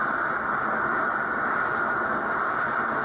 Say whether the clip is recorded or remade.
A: recorded